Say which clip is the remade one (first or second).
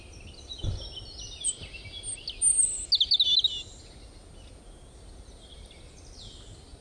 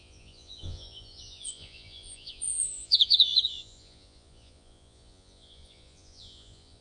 second